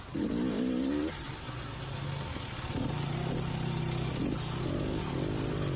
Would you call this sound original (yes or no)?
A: yes